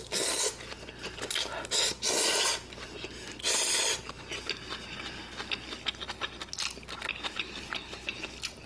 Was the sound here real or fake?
real